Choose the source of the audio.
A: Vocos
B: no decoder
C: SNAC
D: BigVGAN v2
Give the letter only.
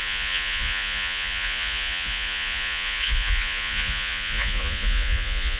A